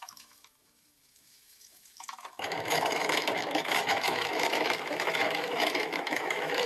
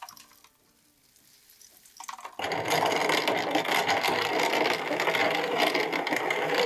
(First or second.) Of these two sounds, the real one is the second